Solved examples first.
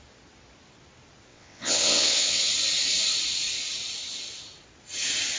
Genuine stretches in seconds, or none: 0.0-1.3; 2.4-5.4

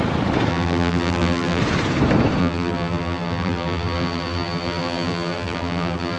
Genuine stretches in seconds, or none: 0.0-0.5; 1.6-2.4

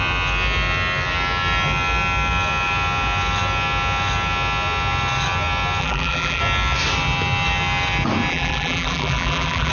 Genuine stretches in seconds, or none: 0.0-5.8; 6.4-8.3

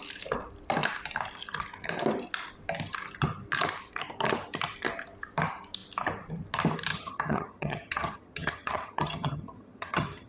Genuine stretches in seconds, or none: 0.0-6.9

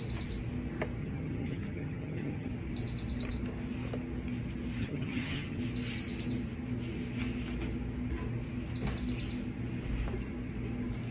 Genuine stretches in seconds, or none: 0.0-1.0; 2.5-4.8; 5.6-11.1

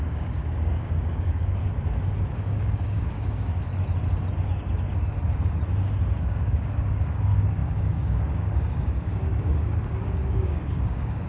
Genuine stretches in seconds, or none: 1.6-2.3; 3.7-6.2

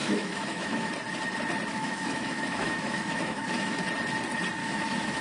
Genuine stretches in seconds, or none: 0.9-1.7; 3.8-4.6